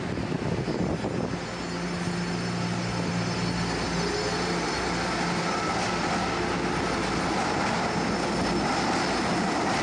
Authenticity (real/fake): real